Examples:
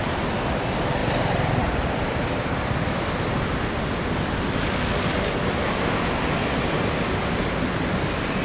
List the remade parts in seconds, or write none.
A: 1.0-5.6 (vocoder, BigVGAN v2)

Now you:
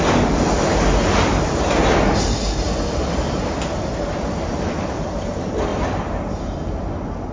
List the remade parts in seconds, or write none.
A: 5.7-7.3 (vocoder, BigVGAN v2)

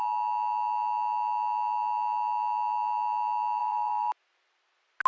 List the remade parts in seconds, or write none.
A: 3.6-4.1 (vocoder, BigVGAN v2)

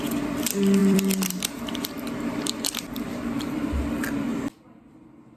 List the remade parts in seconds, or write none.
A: 0.8-3.9 (vocoder, BigVGAN v2)

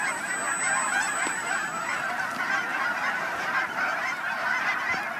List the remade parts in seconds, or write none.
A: 1.0-2.2 (vocoder, BigVGAN v2); 2.7-4.8

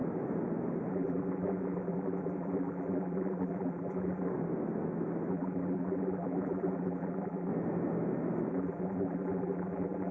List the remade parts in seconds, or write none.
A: 0.9-4.3 (vocoder, BigVGAN v2); 5.3-7.5; 8.5-10.1

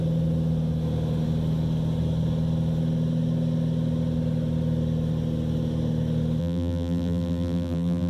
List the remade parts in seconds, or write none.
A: 6.4-8.1 (vocoder, BigVGAN v2)